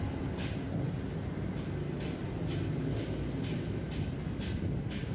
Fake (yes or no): no